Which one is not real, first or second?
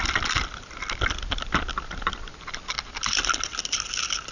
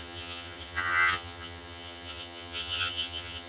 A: second